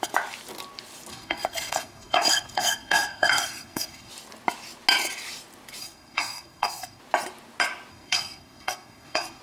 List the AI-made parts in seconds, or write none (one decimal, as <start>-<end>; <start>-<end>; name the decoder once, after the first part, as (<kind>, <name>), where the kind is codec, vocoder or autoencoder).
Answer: 1.1-4.1 (codec, SNAC); 5.8-7.0; 7.9-9.4